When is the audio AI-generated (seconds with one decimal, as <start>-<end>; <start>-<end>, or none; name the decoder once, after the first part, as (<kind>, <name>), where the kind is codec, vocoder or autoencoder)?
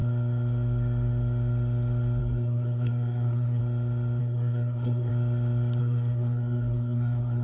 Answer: 2.2-3.6 (codec, SNAC); 4.2-5.1; 5.8-7.4